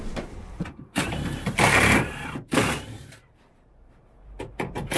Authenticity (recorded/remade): remade